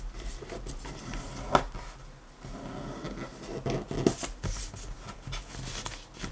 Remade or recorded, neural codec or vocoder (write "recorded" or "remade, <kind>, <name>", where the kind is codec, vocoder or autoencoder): recorded